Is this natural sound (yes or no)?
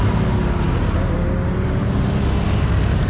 yes